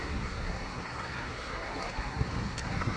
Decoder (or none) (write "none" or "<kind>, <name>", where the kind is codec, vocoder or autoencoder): codec, SNAC